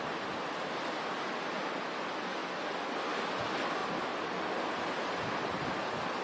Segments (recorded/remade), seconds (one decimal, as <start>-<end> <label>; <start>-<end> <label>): 0.0-6.2 recorded